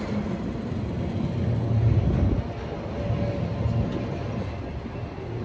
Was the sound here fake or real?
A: real